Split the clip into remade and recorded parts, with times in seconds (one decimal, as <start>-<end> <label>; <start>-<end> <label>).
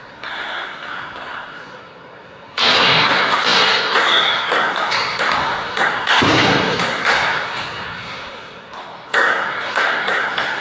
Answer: 0.0-10.6 remade